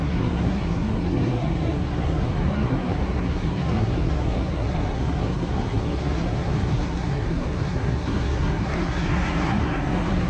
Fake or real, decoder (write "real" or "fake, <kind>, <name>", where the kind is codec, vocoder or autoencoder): fake, codec, SNAC